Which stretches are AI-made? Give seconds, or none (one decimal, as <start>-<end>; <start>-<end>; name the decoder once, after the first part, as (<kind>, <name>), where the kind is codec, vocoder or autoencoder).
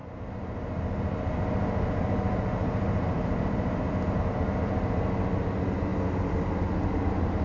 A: none